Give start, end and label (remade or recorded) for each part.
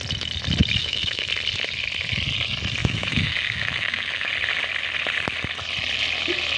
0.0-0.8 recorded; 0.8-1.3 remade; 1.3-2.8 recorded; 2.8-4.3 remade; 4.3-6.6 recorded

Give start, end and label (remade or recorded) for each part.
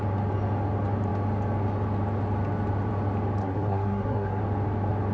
0.0-3.4 recorded; 3.4-4.4 remade; 4.4-5.1 recorded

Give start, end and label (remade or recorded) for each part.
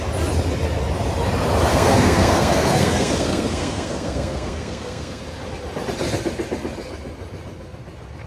0.0-1.7 recorded; 1.7-5.2 remade; 5.2-8.3 recorded